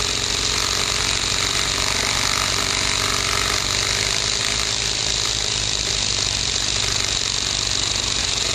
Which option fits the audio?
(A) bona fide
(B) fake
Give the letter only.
A